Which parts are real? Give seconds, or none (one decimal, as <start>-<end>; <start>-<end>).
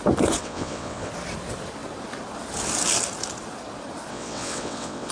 0.0-0.4; 1.1-4.1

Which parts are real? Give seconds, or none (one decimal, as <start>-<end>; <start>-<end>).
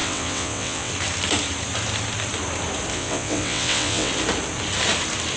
0.9-2.9; 4.1-5.4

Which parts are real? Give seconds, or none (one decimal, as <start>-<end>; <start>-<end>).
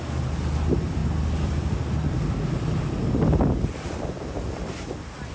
0.0-5.3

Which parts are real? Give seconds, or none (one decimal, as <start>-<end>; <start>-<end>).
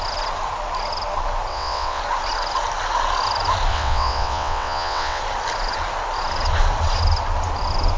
0.0-1.5; 2.0-3.7; 5.2-8.0